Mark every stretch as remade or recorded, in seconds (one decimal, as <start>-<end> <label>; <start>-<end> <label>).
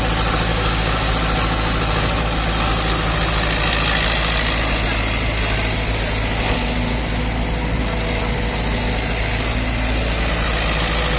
0.0-0.5 recorded; 0.5-1.1 remade; 1.1-11.2 recorded